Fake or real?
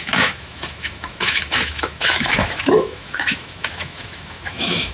fake